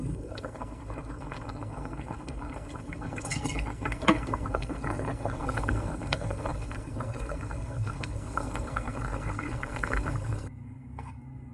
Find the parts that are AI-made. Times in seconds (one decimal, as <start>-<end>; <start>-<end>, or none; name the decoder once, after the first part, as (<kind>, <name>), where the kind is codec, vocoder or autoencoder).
0.0-11.5 (codec, SNAC)